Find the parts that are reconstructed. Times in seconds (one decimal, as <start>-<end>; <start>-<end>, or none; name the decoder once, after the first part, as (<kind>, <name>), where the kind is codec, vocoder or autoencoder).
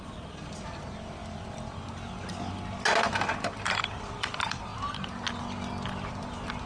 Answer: 0.0-1.2 (vocoder, BigVGAN v2); 3.0-4.7; 6.1-6.7